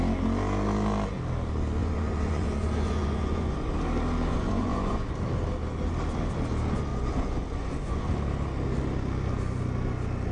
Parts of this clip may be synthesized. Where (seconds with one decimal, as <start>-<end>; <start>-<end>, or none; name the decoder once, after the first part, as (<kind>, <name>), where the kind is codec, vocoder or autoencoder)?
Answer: 1.8-3.7 (vocoder, Vocos); 4.3-5.1; 6.9-8.1